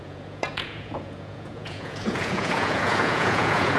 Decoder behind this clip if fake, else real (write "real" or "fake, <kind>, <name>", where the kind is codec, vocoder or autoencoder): fake, vocoder, Vocos